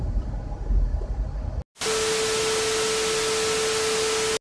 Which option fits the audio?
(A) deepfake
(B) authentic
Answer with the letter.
B